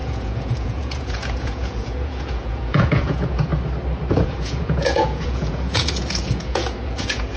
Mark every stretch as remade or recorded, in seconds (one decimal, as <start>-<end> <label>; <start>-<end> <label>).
0.0-3.5 remade; 3.5-4.1 recorded; 4.1-7.4 remade